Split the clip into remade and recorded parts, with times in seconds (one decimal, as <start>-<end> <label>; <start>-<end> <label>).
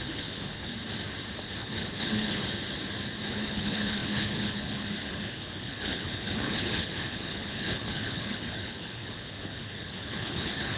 0.0-0.7 remade; 0.7-1.6 recorded; 1.6-2.4 remade; 2.4-3.3 recorded; 3.3-10.8 remade